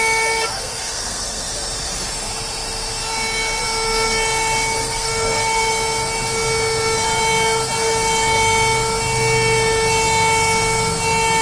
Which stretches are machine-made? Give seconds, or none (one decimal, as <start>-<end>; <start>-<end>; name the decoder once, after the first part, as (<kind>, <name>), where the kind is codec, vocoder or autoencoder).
0.5-1.5 (codec, SNAC); 4.8-5.7